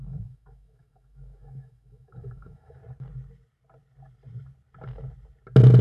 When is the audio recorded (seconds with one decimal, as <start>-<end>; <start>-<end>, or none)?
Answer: 2.8-5.8